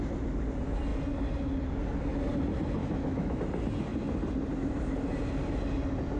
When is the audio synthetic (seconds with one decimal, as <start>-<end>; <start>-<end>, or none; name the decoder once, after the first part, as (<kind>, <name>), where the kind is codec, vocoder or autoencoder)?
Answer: 2.8-3.4 (autoencoder, DAC-VAE)